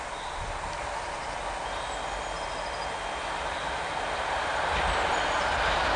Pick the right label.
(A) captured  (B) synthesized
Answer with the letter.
A